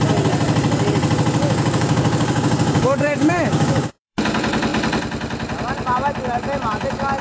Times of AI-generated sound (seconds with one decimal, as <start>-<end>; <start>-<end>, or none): 1.4-4.2

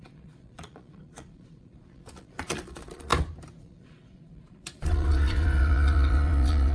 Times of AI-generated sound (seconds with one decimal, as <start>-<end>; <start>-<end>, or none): 0.0-3.1; 3.6-6.7

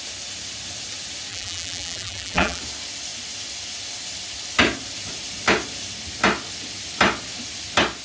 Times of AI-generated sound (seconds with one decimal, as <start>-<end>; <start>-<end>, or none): 1.3-2.6

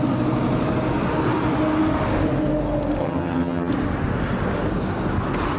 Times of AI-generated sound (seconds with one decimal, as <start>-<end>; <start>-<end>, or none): 3.0-3.7

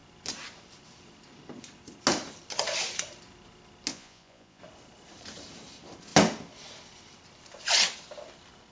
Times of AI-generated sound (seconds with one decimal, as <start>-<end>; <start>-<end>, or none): 3.9-4.6